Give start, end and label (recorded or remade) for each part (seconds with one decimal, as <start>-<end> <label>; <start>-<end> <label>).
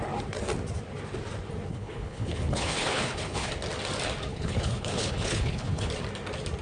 0.0-1.7 recorded; 1.7-3.5 remade; 3.5-4.3 recorded; 4.3-5.9 remade; 5.9-6.6 recorded